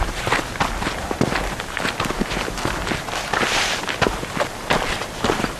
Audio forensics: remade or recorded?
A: recorded